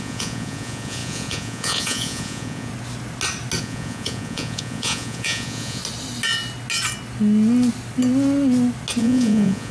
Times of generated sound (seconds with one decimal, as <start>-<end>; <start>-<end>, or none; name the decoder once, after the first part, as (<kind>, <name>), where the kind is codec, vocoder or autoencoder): 0.0-2.7 (vocoder, Vocos); 3.6-5.8; 9.0-9.7